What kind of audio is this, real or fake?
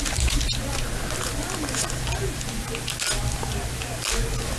real